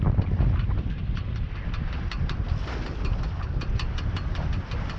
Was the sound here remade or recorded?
recorded